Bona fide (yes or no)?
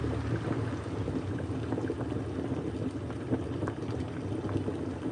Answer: yes